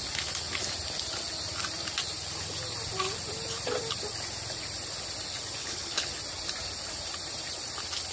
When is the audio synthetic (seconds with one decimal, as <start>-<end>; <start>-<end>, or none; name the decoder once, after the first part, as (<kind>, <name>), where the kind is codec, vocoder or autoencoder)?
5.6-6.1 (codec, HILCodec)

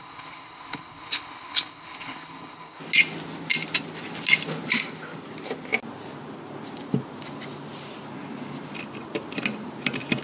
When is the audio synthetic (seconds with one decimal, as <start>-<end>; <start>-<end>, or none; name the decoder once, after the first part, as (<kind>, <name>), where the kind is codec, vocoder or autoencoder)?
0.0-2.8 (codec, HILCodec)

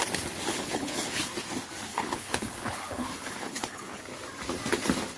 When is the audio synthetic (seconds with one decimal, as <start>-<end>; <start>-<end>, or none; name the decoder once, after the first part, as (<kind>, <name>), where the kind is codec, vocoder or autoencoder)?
0.5-1.3 (codec, HILCodec); 1.9-4.0

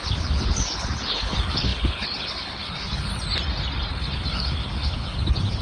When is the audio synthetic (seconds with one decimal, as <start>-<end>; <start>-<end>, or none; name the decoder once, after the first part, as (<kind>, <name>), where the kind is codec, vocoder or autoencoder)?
0.0-3.1 (codec, HILCodec); 3.9-5.6